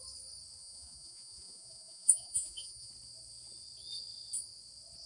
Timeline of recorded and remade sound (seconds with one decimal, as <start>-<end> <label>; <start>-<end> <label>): 0.0-0.6 recorded; 0.6-2.9 remade; 2.9-5.1 recorded